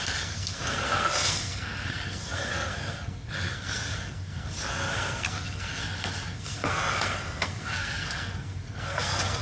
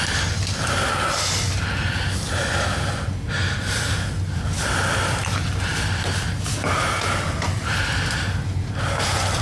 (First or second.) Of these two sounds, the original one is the second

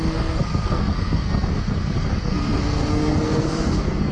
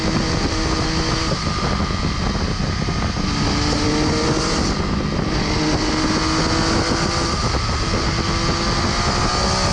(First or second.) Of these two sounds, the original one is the second